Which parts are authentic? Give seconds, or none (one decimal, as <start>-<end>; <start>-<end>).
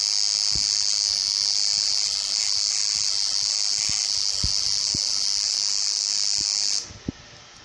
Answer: 0.0-7.6